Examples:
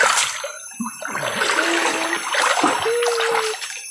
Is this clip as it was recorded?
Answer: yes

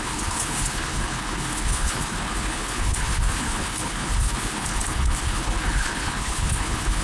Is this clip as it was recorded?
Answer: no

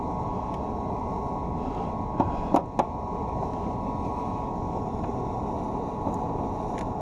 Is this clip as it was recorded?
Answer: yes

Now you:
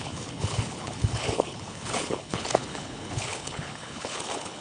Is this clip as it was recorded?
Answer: no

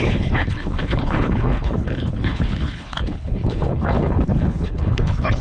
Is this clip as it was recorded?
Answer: no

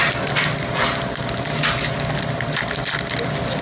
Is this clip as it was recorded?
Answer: yes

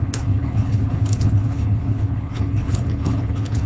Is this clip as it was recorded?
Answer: no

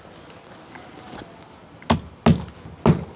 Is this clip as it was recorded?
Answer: yes